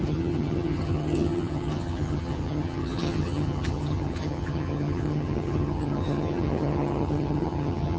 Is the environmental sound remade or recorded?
remade